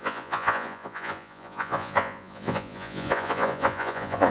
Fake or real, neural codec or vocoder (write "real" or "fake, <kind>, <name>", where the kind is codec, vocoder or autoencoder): fake, vocoder, Vocos